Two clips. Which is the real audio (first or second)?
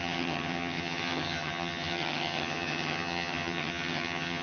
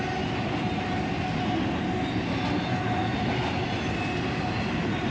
second